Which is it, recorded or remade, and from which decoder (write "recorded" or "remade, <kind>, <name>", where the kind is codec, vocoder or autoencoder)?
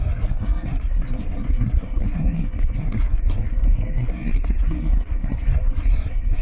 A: remade, codec, SNAC